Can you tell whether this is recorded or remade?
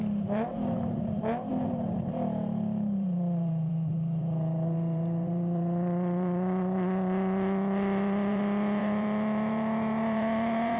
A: remade